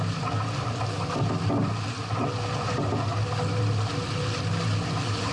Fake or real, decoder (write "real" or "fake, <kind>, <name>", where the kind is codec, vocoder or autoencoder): real